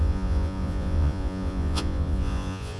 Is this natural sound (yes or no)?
no